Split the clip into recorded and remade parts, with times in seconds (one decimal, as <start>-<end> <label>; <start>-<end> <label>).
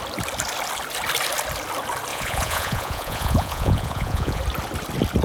0.0-2.1 recorded; 2.1-4.4 remade; 4.4-5.2 recorded